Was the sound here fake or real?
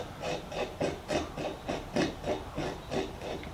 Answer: real